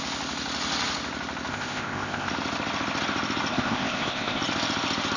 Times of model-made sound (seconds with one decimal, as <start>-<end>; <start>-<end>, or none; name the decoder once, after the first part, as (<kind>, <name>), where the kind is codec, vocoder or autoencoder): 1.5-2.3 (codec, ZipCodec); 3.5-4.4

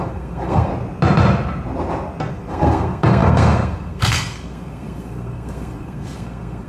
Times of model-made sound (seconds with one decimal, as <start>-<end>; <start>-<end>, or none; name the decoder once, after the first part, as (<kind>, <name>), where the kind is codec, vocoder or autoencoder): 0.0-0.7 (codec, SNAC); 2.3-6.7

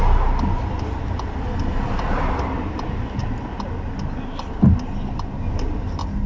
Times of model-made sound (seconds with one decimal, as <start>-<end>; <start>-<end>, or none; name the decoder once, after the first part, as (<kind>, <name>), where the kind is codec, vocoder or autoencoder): none

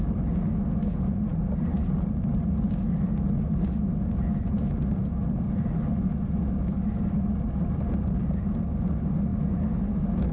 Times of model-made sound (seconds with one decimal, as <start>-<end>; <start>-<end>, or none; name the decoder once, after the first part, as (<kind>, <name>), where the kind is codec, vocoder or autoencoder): none

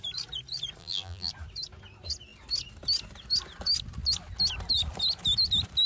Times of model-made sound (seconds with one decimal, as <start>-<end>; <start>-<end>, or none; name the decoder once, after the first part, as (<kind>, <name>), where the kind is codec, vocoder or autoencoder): 0.8-1.3 (vocoder, BigVGAN v2)